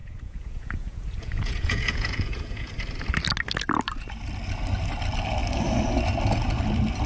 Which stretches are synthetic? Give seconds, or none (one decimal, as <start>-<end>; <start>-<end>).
0.0-2.7